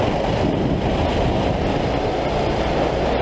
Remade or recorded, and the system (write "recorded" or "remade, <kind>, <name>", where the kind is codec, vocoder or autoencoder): recorded